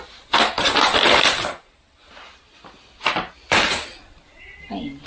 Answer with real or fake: real